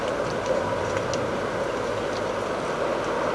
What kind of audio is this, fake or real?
real